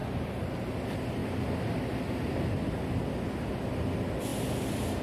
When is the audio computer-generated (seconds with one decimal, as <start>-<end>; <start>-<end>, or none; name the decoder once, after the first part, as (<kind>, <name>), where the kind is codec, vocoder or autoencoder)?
0.0-0.5 (vocoder, BigVGAN v2)